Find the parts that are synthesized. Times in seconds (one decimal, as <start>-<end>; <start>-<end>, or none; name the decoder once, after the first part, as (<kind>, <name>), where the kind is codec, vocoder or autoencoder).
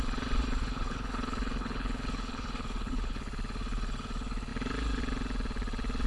0.6-3.2 (codec, HILCodec)